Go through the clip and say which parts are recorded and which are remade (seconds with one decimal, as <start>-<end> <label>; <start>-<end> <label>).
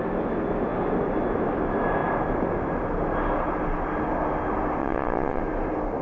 0.0-4.8 recorded; 4.8-5.4 remade; 5.4-6.0 recorded